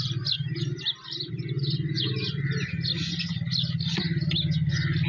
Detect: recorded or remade recorded